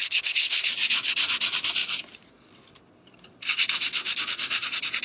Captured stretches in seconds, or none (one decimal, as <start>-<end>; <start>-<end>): 0.7-5.0